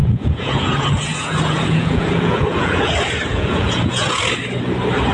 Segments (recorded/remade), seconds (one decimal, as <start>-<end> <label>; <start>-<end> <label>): 0.0-2.9 remade; 2.9-3.3 recorded; 3.3-4.2 remade; 4.2-5.1 recorded